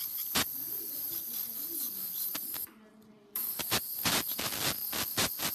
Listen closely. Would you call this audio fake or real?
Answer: real